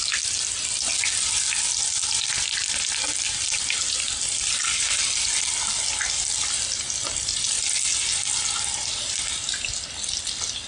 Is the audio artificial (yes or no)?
no